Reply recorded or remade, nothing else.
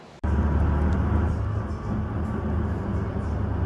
recorded